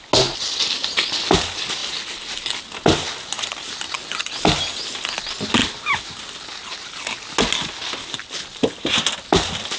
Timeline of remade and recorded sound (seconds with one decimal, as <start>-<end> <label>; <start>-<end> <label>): 0.0-9.8 recorded